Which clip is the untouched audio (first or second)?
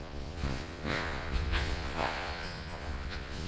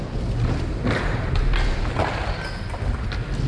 second